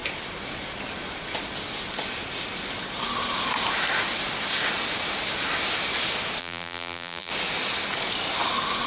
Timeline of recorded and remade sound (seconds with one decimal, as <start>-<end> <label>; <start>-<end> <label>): 0.0-6.4 recorded; 6.4-7.3 remade; 7.3-8.9 recorded